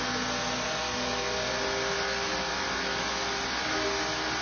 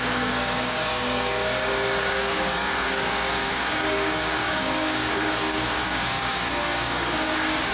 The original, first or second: first